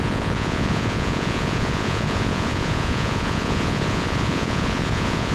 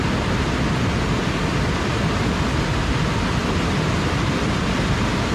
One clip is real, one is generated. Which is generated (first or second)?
first